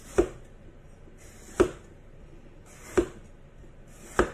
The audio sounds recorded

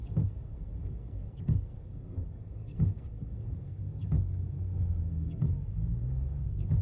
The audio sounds remade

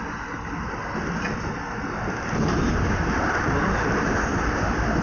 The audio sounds recorded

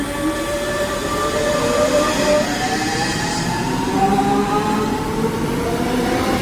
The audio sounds remade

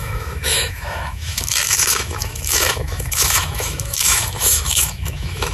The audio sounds remade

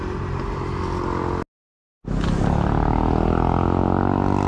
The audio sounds recorded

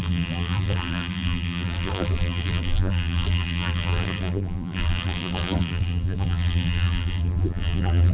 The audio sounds remade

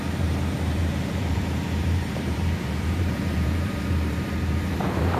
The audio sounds remade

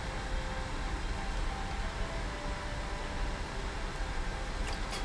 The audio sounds recorded